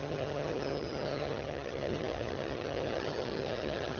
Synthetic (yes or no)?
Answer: yes